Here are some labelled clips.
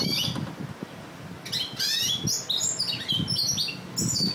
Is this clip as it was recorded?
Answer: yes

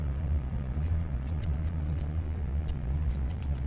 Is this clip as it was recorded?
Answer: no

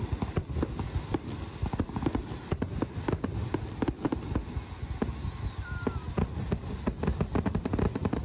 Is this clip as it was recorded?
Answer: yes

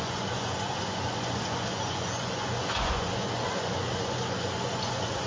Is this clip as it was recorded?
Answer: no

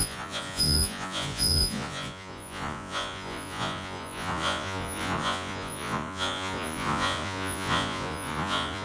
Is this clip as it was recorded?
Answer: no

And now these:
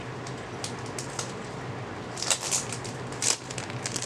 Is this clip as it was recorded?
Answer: yes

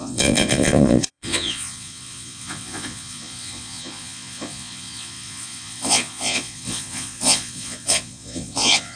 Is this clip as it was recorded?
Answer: no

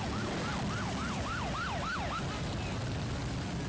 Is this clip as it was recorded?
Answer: yes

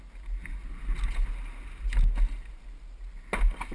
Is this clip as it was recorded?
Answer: yes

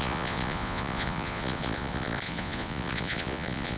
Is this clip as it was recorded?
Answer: no